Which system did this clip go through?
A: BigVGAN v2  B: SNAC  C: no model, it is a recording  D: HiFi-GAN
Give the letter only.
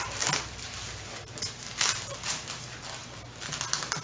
C